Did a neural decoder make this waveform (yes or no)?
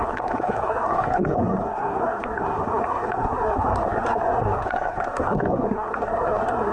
yes